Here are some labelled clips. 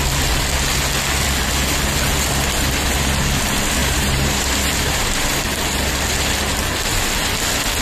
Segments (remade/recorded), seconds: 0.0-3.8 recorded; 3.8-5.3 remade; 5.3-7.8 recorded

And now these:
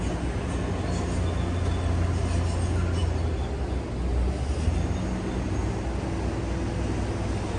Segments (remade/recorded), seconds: 0.0-7.6 recorded

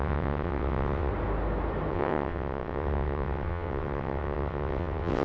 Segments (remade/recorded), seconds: 0.0-1.1 remade; 1.1-1.9 recorded; 1.9-5.2 remade

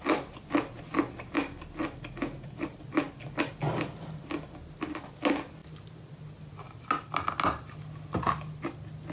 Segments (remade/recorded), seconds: 0.0-9.1 recorded

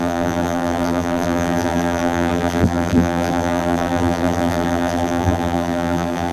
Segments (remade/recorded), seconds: 0.0-6.3 remade

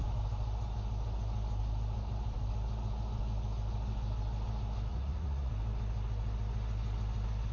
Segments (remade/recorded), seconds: 0.0-4.9 recorded; 4.9-5.5 remade; 5.5-7.5 recorded

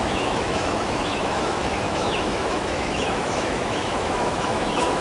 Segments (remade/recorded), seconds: 0.0-5.0 remade

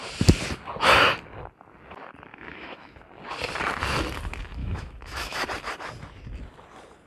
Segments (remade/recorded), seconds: 0.0-2.3 recorded; 2.3-2.9 remade; 2.9-4.6 recorded; 4.6-5.4 remade; 5.4-7.1 recorded